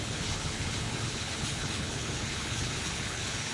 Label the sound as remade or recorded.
remade